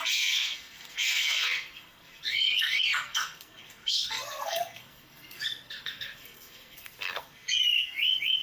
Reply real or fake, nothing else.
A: fake